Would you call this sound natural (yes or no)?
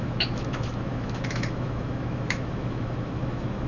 no